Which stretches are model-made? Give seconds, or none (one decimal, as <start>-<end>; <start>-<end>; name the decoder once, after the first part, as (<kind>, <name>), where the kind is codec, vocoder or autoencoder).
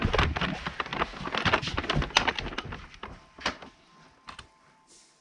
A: none